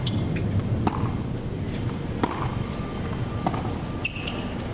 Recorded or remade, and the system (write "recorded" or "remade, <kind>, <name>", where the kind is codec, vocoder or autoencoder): recorded